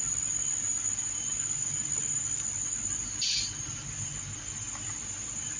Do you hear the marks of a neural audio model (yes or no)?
no